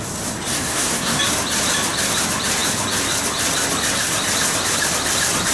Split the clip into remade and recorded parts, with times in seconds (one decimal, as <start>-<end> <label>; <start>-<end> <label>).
0.0-0.5 recorded; 0.5-1.2 remade; 1.2-5.5 recorded